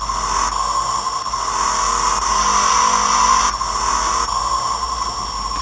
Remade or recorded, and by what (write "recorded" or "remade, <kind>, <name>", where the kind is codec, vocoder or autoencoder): recorded